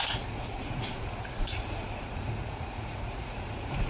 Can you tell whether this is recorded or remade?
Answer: remade